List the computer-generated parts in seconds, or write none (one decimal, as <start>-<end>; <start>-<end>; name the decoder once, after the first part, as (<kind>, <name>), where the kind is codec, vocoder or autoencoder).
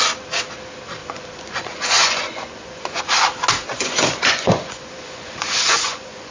1.0-3.0 (vocoder, Vocos); 3.7-6.3